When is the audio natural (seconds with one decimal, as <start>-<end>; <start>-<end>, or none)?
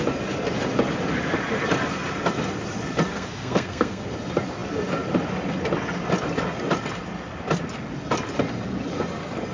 0.0-3.1; 4.1-9.5